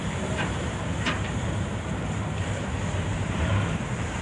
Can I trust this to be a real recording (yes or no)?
no